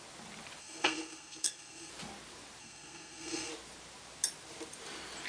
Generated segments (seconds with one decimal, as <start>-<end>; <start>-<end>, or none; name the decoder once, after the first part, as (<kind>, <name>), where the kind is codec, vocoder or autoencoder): 0.6-1.9 (codec, SNAC); 2.6-3.5